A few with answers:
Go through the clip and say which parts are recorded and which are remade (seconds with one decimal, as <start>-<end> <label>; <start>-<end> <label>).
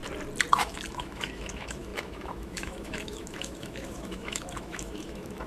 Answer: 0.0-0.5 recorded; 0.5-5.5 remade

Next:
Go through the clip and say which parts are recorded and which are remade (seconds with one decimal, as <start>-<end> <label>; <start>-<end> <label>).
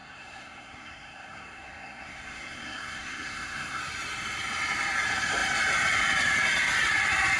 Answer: 0.0-3.8 remade; 3.8-7.4 recorded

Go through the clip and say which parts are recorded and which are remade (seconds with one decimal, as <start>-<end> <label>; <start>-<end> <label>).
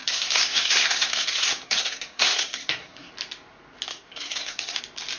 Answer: 0.0-3.1 remade; 3.1-3.9 recorded; 3.9-4.8 remade; 4.8-5.2 recorded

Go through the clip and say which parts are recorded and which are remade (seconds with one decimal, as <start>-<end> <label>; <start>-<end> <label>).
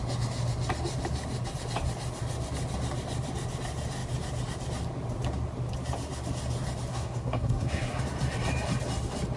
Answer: 0.0-6.9 recorded; 6.9-8.0 remade; 8.0-9.4 recorded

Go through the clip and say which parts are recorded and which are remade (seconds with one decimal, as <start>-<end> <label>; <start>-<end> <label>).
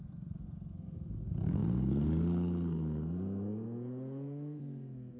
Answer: 0.0-5.2 remade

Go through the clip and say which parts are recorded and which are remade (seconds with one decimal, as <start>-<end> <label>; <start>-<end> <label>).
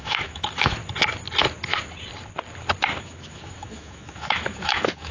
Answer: 0.0-0.8 remade; 0.8-3.0 recorded; 3.0-5.1 remade